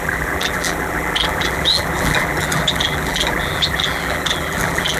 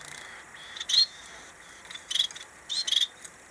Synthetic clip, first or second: first